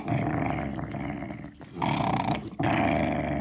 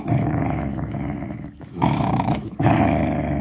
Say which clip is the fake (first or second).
second